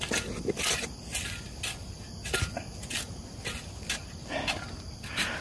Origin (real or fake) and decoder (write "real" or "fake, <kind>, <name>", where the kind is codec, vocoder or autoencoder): real